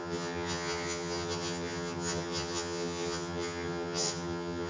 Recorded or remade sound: remade